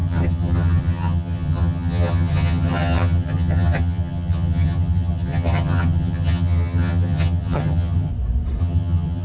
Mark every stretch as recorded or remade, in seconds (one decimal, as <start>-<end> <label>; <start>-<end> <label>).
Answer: 0.0-8.1 remade; 8.1-8.6 recorded; 8.6-9.2 remade